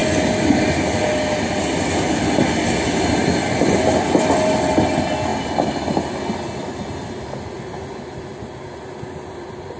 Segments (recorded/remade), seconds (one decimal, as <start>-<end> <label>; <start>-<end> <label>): 0.0-9.8 recorded

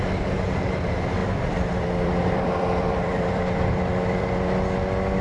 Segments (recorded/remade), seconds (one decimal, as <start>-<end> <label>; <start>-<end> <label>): 0.0-1.2 recorded; 1.2-4.3 remade; 4.3-5.2 recorded